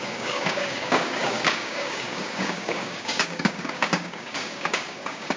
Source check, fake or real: fake